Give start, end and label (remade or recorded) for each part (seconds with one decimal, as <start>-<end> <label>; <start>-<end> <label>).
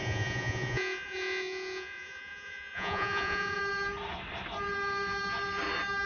0.0-3.6 remade; 3.6-6.1 recorded